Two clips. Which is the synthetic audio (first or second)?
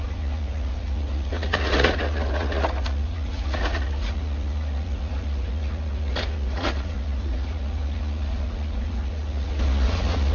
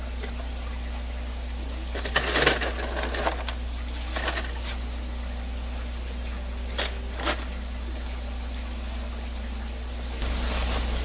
first